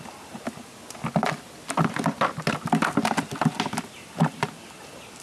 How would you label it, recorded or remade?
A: recorded